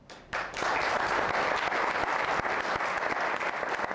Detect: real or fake real